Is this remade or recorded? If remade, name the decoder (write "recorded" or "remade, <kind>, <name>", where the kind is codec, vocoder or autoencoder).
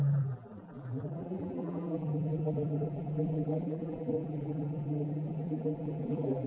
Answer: remade, vocoder, BigVGAN v2